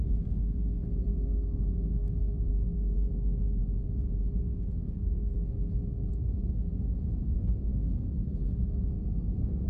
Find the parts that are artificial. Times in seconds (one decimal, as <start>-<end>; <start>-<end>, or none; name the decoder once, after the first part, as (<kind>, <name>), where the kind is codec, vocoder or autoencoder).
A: 0.0-3.6 (codec, SNAC); 4.4-9.7